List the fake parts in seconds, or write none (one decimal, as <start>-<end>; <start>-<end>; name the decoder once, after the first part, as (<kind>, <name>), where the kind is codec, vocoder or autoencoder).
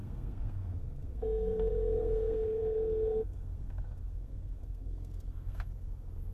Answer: 0.0-6.3 (codec, SNAC)